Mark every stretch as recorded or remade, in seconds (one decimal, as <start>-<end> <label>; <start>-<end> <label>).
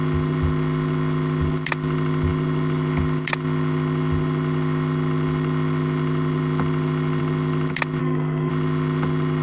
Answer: 0.0-8.0 recorded; 8.0-8.5 remade; 8.5-9.4 recorded